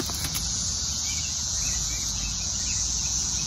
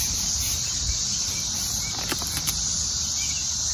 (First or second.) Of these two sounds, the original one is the second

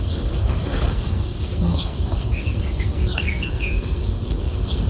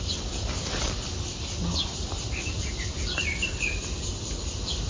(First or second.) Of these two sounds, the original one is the second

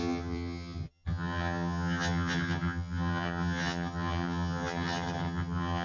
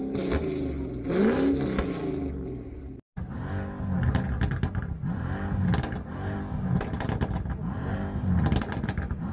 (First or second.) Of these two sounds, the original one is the second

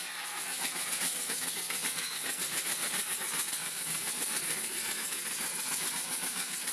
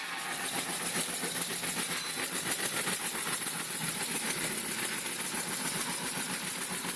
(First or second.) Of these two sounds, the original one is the second